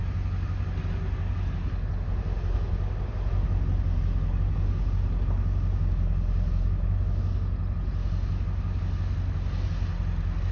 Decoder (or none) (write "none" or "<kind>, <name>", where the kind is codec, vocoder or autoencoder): none